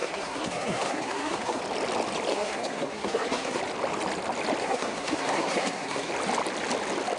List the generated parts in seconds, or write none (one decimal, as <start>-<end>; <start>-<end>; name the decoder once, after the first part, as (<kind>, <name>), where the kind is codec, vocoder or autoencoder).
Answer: 0.0-1.6 (codec, SNAC); 2.3-3.6; 4.6-6.1